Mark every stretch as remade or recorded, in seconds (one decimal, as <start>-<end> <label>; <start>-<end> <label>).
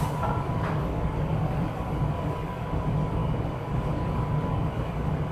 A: 0.0-5.3 remade